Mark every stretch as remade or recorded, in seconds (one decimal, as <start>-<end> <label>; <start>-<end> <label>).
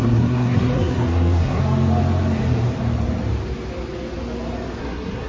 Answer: 0.0-1.6 remade; 1.6-4.8 recorded; 4.8-5.3 remade